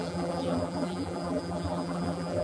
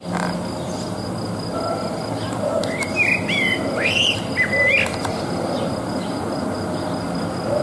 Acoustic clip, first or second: second